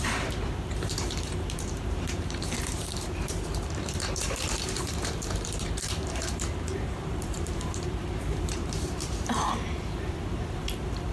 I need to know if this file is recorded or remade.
remade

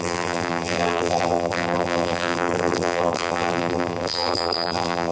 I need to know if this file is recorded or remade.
remade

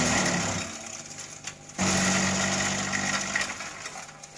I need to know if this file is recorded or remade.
recorded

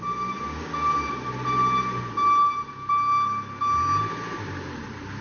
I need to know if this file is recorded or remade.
recorded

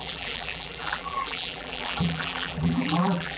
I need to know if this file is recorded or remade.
remade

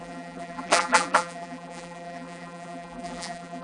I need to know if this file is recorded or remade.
remade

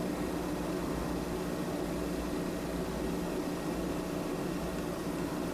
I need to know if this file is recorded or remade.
recorded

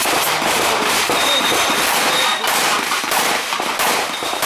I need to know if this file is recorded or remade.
remade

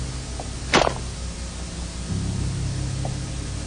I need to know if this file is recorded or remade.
recorded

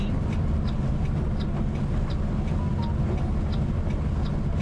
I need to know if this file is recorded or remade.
recorded